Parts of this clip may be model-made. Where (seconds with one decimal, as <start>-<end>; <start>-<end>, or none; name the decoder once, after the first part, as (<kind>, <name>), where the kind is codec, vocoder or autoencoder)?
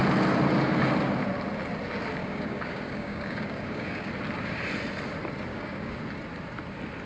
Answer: 2.2-4.1 (codec, DAC); 5.5-6.0